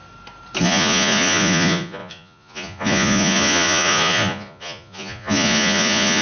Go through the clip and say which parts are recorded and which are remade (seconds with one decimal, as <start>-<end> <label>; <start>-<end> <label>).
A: 0.0-0.6 recorded; 0.6-6.2 remade